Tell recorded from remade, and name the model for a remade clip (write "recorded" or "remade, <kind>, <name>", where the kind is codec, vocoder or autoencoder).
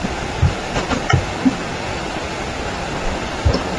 recorded